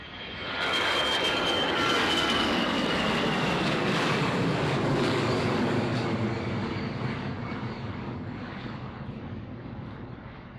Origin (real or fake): fake